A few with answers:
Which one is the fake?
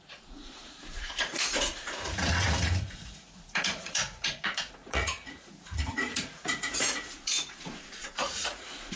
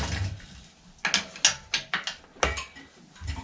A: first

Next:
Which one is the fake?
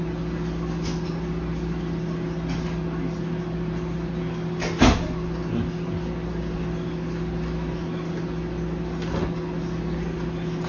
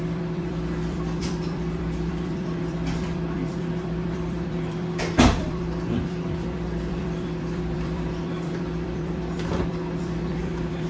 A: second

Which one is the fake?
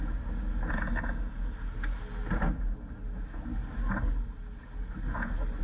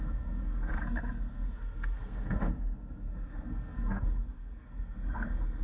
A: second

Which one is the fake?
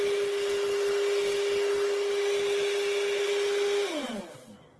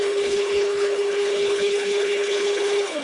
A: second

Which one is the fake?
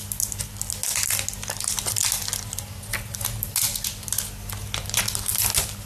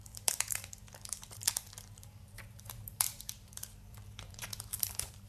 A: second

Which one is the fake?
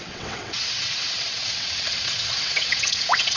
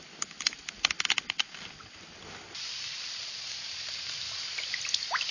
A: first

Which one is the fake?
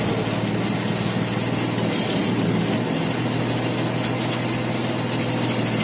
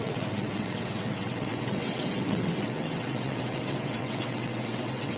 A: second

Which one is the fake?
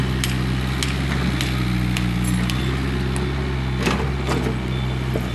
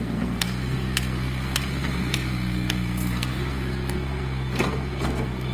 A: second